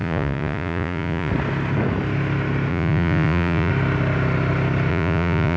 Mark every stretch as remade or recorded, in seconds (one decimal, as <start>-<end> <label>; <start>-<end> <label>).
0.0-1.3 remade; 1.3-2.7 recorded; 2.7-3.7 remade; 3.7-4.9 recorded; 4.9-5.6 remade